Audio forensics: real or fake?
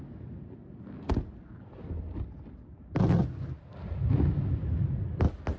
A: real